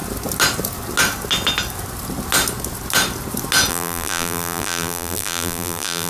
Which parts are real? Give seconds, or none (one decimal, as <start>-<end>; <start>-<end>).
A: 0.0-3.7